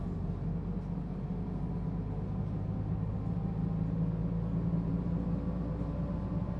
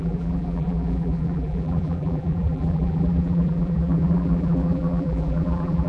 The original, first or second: first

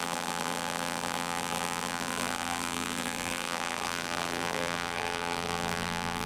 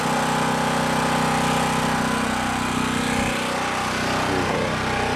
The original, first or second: second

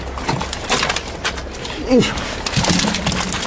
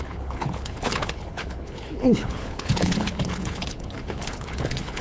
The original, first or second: first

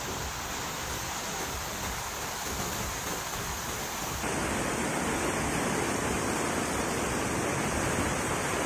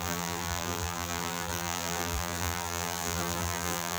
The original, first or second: first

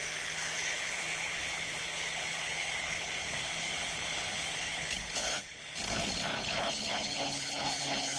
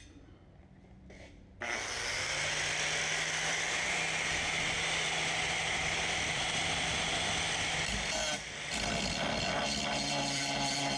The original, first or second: second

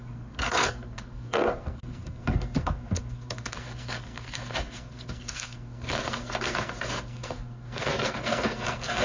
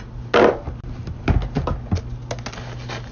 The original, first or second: second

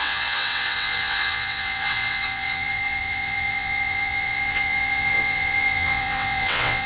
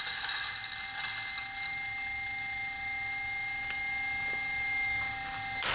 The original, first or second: second